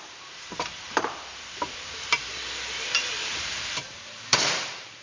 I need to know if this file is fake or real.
fake